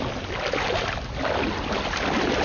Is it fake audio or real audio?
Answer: real